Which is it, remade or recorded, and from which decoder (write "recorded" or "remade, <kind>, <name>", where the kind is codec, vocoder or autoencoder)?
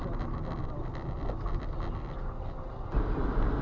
recorded